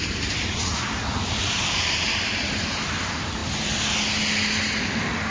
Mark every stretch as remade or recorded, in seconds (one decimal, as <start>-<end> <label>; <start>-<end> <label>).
0.0-3.4 remade; 3.4-4.8 recorded; 4.8-5.3 remade